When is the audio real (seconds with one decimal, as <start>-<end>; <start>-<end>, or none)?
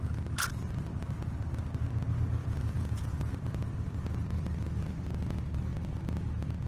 0.0-2.4; 3.3-6.7